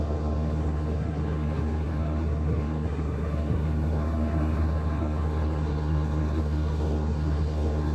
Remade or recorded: remade